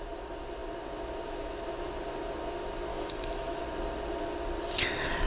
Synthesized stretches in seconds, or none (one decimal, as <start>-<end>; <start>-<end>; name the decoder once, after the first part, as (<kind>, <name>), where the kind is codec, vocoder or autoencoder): 2.9-3.6 (autoencoder, DAC-VAE)